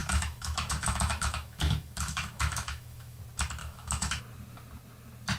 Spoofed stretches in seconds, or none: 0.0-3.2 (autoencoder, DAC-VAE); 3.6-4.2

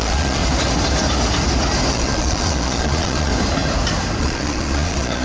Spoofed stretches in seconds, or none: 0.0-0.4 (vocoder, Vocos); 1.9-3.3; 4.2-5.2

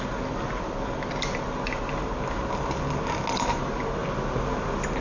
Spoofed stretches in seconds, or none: none

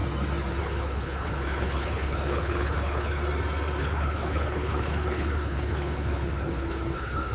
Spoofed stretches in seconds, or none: 0.6-3.2 (codec, HILCodec); 3.8-7.3

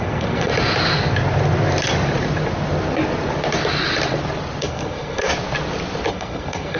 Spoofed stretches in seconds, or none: 0.0-0.5 (codec, SNAC); 4.6-5.3; 6.1-6.8

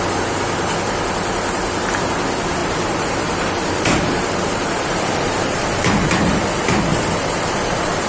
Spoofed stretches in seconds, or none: 2.6-6.1 (vocoder, BigVGAN v2); 6.9-8.1